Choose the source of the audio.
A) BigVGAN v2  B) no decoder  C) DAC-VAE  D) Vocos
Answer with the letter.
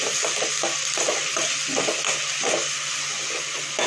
B